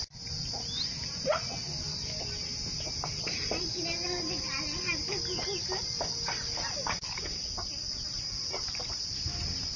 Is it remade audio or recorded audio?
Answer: recorded